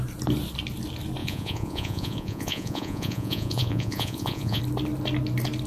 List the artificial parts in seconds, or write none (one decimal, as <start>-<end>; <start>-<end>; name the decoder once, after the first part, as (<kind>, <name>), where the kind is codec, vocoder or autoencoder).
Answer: 1.2-4.6 (vocoder, Vocos)